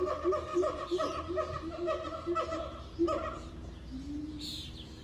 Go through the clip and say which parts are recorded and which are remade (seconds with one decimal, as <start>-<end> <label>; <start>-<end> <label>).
0.0-5.0 remade